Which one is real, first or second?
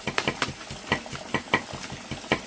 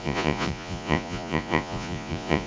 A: first